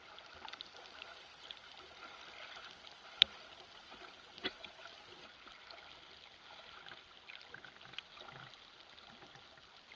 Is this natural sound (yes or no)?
yes